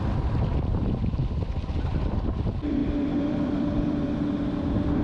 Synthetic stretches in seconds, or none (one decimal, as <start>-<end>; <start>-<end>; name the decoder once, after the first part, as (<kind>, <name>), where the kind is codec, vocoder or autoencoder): 0.0-1.2 (vocoder, BigVGAN v2); 1.8-5.0